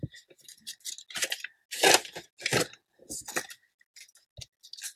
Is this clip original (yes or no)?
yes